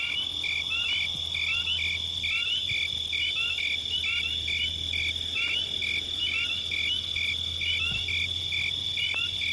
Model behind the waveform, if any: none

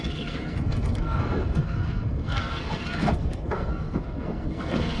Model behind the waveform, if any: codec, SNAC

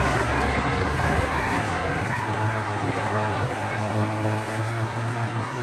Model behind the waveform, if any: codec, SNAC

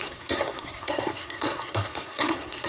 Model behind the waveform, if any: codec, SNAC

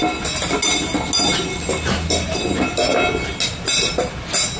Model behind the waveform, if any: none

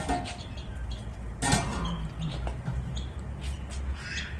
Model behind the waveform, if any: none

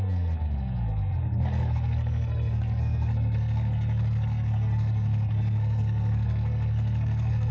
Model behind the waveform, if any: codec, SNAC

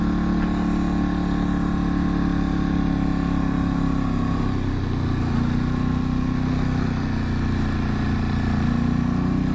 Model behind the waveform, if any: none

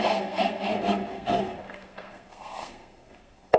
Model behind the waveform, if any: codec, SNAC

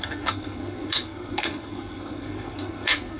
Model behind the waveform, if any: codec, SNAC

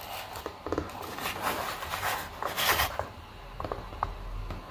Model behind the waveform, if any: none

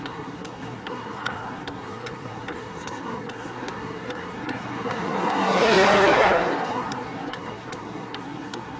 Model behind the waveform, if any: codec, SNAC